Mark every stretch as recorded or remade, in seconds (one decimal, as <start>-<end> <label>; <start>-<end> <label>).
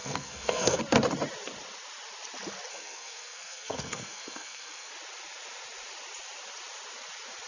0.0-0.8 remade; 0.8-2.7 recorded; 2.7-4.9 remade; 4.9-7.5 recorded